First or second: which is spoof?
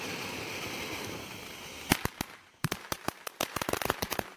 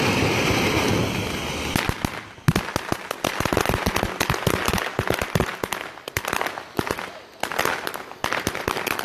first